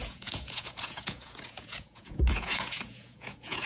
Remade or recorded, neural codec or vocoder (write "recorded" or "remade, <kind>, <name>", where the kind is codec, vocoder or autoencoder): remade, vocoder, Vocos